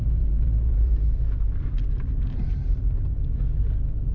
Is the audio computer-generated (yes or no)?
yes